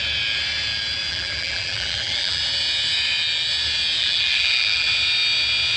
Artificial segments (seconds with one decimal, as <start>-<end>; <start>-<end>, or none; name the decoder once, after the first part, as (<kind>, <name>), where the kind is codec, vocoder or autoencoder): 1.1-2.4 (vocoder, BigVGAN v2); 4.0-4.9